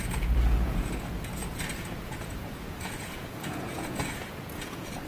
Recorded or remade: remade